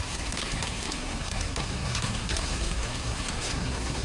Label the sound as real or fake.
fake